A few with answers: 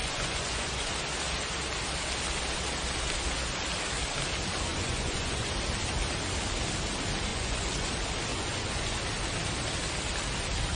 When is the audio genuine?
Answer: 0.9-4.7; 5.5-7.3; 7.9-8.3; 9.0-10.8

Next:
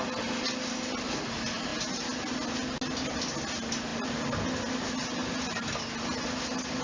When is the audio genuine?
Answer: 0.0-6.8

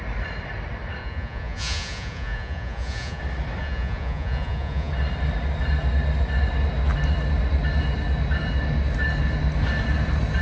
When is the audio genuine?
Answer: 0.0-1.0; 3.2-3.6; 4.9-10.4